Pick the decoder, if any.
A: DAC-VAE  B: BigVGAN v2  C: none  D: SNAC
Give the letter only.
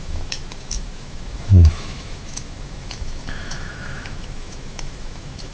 A